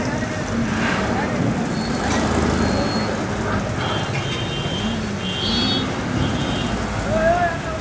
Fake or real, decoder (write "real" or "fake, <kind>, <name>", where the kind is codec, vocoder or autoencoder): real